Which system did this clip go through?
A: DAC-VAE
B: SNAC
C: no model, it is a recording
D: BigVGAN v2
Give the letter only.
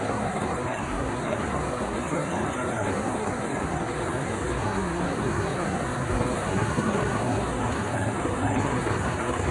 B